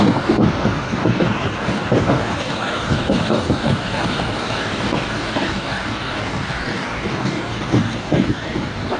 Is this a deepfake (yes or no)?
yes